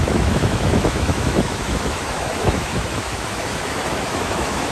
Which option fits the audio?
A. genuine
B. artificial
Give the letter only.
B